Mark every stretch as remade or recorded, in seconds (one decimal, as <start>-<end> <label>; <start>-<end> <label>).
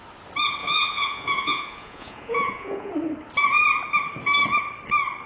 0.0-0.6 recorded; 0.6-2.9 remade; 2.9-5.3 recorded